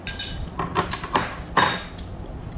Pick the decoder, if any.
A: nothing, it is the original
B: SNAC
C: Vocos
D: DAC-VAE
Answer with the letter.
A